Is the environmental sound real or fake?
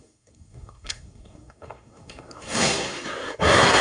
fake